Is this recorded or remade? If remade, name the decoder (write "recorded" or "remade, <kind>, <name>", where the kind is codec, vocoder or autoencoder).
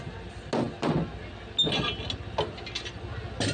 recorded